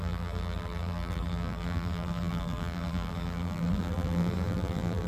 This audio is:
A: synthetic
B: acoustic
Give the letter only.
A